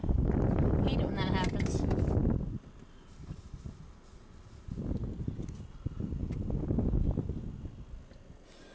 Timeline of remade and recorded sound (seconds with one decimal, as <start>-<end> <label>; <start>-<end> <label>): 0.0-8.7 recorded